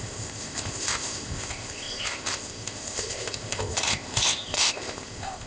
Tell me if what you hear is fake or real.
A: fake